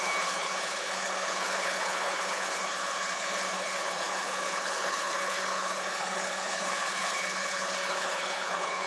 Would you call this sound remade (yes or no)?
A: yes